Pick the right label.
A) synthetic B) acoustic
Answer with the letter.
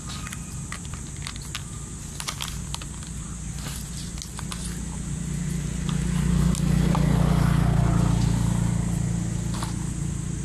B